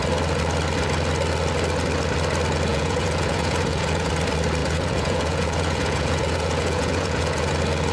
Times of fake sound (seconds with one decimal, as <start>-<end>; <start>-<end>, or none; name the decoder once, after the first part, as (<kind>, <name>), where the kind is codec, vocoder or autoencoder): 2.7-4.1 (vocoder, Vocos); 4.6-7.5